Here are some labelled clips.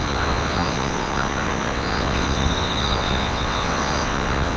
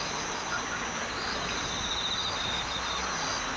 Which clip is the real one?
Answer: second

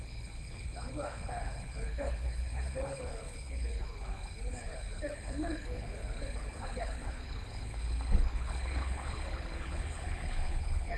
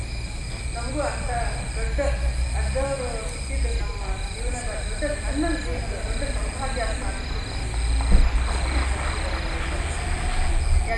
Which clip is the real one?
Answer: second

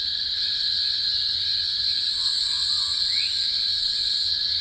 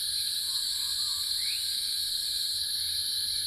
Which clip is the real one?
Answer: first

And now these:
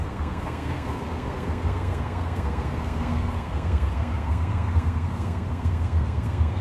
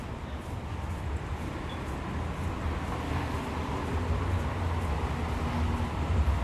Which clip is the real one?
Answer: second